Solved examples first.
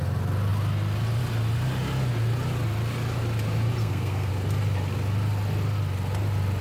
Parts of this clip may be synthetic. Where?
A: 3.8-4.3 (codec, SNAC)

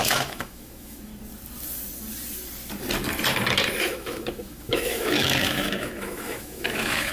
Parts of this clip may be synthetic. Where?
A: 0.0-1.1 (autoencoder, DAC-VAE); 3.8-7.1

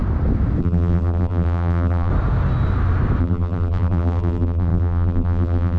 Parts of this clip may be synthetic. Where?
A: 0.6-2.1 (vocoder, BigVGAN v2); 3.2-5.8

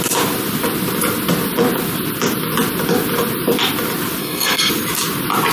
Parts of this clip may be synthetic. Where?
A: 4.2-4.7 (codec, SNAC)